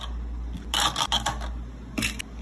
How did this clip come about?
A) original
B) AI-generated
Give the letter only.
A